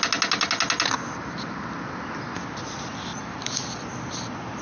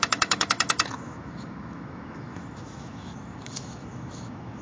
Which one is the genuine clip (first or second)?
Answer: first